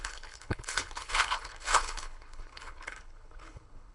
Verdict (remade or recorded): remade